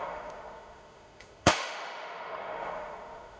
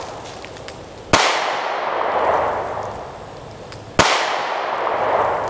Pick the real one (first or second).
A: second